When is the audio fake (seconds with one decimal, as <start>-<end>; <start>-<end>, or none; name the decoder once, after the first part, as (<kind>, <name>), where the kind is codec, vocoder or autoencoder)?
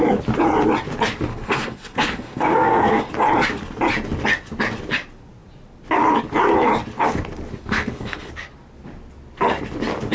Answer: 1.3-3.1 (codec, SNAC); 7.6-8.3